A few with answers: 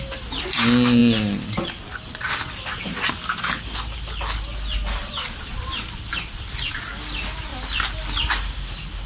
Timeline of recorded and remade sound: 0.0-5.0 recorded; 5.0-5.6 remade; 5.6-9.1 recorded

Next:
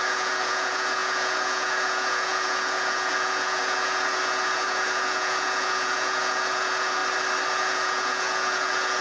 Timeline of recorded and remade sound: 0.0-7.0 remade; 7.0-7.5 recorded; 7.5-9.0 remade

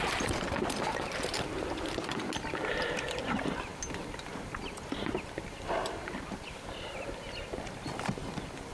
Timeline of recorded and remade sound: 0.0-8.7 recorded

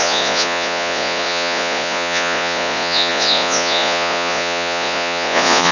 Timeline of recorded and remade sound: 0.0-5.7 remade

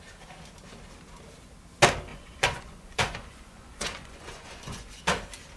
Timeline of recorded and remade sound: 0.0-2.1 recorded; 2.1-5.0 remade; 5.0-5.6 recorded